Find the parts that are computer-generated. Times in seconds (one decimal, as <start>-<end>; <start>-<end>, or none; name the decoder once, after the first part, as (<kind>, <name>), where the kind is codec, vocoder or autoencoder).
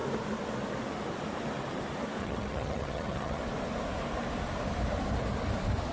2.2-3.4 (vocoder, HiFi-GAN)